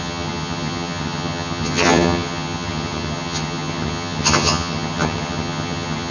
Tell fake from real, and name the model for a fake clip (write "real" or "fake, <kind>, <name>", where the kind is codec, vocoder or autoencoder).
fake, vocoder, HiFi-GAN